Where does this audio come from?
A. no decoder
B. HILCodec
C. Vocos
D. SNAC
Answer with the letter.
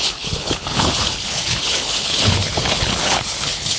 B